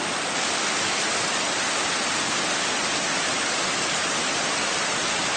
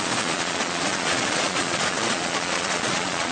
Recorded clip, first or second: first